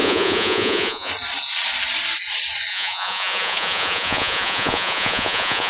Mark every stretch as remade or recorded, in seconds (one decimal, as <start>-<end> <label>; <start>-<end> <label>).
0.0-1.1 remade; 1.1-2.7 recorded; 2.7-5.7 remade